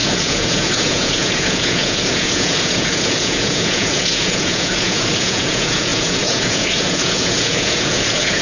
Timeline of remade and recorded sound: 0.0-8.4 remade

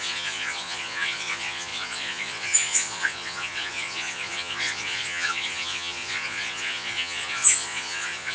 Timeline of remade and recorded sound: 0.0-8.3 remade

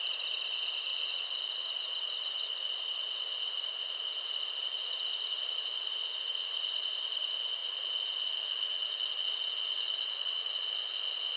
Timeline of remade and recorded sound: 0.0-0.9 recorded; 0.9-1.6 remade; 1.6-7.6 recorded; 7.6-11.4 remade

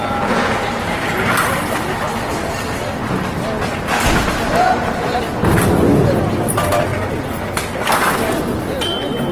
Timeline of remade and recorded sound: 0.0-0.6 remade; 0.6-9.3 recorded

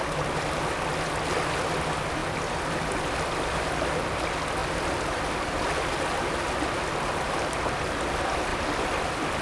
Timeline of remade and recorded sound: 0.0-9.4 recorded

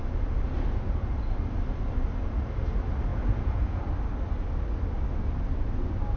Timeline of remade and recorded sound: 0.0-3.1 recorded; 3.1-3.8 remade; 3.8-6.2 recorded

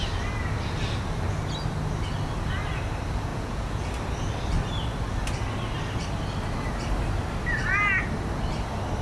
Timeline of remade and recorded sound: 0.0-3.3 recorded; 3.3-3.9 remade; 3.9-9.0 recorded

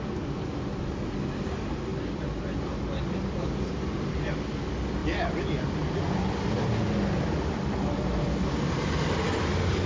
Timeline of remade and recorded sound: 0.0-9.9 recorded